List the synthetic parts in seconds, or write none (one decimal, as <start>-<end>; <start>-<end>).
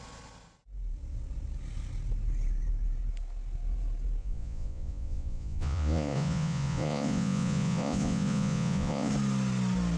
4.2-9.1